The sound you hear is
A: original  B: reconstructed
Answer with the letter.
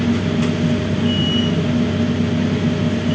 A